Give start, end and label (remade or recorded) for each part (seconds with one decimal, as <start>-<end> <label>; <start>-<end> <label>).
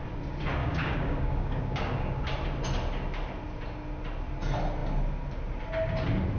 0.0-0.6 recorded; 0.6-2.2 remade; 2.2-6.4 recorded